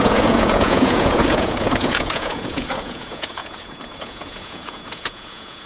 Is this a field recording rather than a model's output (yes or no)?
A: no